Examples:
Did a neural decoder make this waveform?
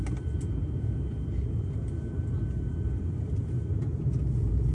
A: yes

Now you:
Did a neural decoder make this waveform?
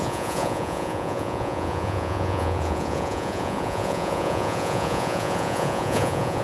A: yes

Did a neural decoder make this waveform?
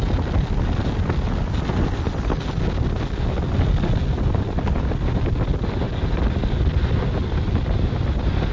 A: no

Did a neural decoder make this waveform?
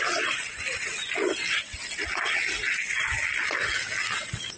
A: no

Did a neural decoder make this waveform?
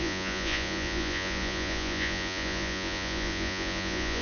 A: yes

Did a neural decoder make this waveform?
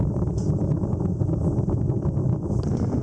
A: no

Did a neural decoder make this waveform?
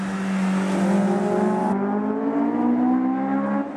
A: no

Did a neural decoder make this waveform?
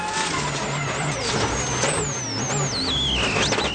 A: no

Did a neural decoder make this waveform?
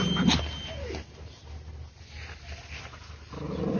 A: no